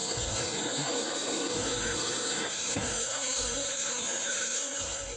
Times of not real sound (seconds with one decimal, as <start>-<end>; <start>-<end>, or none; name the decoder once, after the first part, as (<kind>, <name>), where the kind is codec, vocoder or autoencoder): 0.0-5.2 (codec, SNAC)